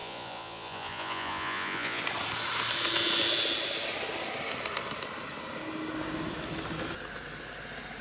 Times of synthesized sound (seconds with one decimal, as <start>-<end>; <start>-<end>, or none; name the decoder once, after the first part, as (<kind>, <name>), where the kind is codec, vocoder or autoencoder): 0.0-2.0 (vocoder, Vocos)